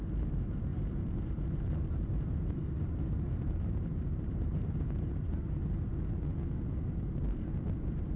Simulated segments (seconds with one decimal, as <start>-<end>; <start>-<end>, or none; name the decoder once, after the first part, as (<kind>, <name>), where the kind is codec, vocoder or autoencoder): 0.7-5.3 (vocoder, BigVGAN v2)

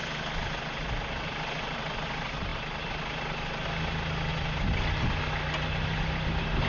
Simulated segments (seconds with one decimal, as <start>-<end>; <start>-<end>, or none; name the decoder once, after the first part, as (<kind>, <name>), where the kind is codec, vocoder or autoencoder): none